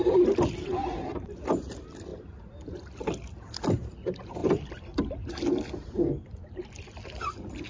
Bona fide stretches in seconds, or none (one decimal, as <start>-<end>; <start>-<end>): 0.0-7.7